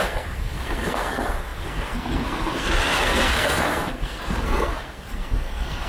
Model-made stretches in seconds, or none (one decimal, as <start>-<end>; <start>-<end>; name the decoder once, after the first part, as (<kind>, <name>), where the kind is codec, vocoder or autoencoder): 0.0-5.9 (codec, SNAC)